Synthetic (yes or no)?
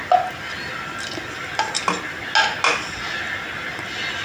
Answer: no